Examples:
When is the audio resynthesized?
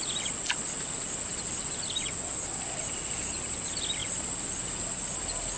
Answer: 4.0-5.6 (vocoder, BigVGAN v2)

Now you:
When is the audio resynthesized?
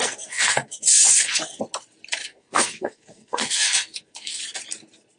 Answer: 0.0-1.6 (codec, SNAC); 2.2-4.4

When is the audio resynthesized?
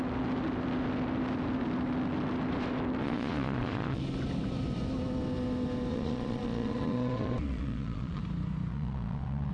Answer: 3.0-4.0 (vocoder, Vocos); 5.9-8.2; 8.7-9.5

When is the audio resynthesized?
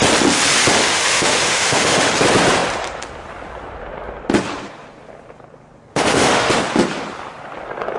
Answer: 0.8-2.1 (autoencoder, DAC-VAE); 5.9-6.5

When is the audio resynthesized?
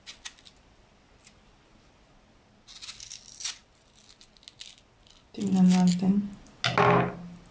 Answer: none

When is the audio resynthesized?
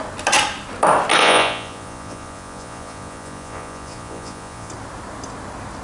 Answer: 1.2-4.7 (vocoder, Vocos)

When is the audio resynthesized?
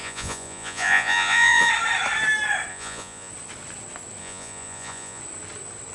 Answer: 0.0-1.7 (vocoder, Vocos); 2.7-3.3; 4.2-5.2